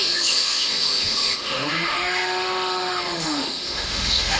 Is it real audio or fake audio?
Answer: fake